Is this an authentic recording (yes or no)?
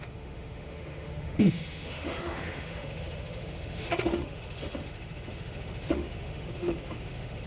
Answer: no